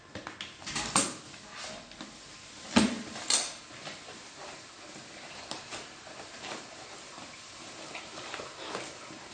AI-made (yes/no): no